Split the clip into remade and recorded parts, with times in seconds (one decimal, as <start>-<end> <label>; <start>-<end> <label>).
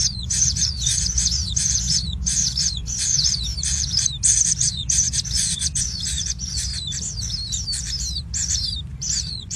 0.0-3.5 remade; 3.5-4.6 recorded; 4.6-6.7 remade; 6.7-9.2 recorded; 9.2-9.6 remade